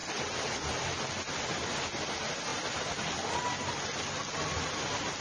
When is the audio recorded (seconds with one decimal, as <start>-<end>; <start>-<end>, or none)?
0.0-5.2